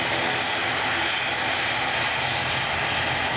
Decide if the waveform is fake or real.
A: real